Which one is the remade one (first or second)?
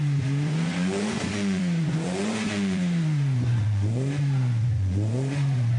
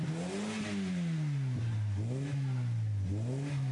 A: first